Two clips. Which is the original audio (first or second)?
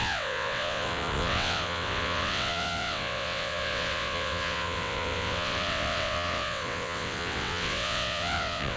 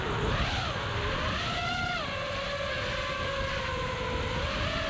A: second